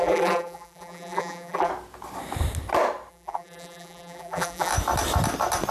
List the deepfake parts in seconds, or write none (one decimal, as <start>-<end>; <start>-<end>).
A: 0.0-1.7; 3.1-4.7